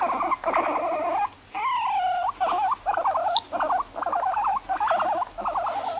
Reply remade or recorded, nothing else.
recorded